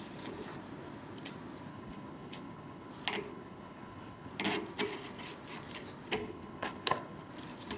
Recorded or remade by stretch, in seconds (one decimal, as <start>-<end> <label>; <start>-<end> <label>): 0.0-1.7 recorded; 1.7-2.9 remade; 2.9-3.3 recorded; 3.3-4.3 remade; 4.3-6.2 recorded; 6.2-7.3 remade; 7.3-7.8 recorded